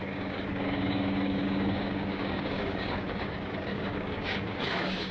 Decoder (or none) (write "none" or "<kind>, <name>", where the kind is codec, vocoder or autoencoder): codec, DAC